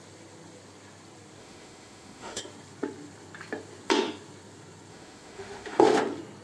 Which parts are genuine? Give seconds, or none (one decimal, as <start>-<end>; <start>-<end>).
0.0-1.4; 2.4-4.9; 6.0-6.4